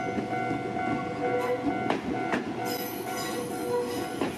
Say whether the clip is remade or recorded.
recorded